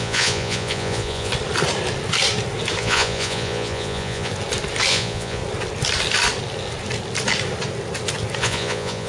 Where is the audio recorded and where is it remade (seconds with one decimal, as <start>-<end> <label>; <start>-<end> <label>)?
0.0-1.3 remade; 1.3-2.8 recorded; 2.8-4.3 remade; 4.3-4.9 recorded; 4.9-5.4 remade; 5.4-8.4 recorded; 8.4-9.1 remade